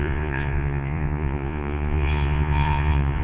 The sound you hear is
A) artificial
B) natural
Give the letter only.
A